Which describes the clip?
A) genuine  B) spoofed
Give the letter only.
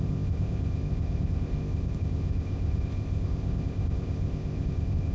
B